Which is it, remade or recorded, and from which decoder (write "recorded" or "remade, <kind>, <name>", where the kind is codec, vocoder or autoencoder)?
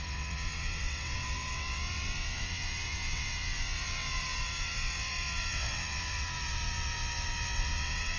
remade, vocoder, WaveNeXt